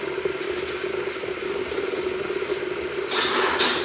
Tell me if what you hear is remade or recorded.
recorded